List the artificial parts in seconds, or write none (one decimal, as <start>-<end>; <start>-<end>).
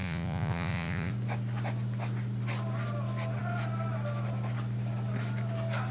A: 0.0-1.1